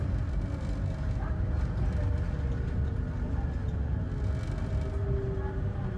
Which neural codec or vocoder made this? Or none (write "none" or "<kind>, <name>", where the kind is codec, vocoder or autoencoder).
none